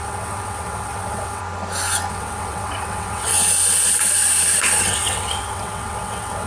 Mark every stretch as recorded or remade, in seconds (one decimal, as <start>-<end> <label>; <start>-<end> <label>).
0.0-1.4 remade; 1.4-2.1 recorded; 2.1-3.3 remade; 3.3-4.8 recorded; 4.8-6.5 remade